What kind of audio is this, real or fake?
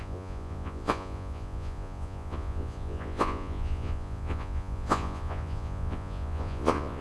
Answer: fake